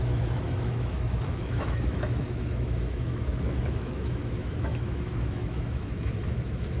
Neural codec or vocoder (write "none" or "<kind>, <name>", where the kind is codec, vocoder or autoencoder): autoencoder, DAC-VAE